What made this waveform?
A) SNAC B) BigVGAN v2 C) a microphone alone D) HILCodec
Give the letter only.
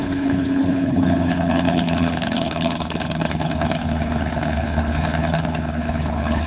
D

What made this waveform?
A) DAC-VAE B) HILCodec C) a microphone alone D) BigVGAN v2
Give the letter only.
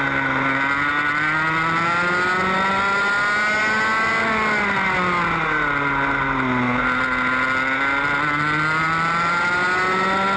C